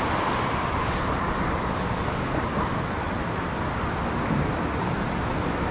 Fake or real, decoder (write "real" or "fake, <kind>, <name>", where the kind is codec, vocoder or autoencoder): real